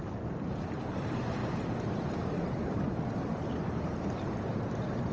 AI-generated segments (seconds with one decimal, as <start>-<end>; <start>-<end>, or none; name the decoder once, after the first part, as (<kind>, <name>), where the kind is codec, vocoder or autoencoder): 0.0-5.1 (vocoder, BigVGAN v2)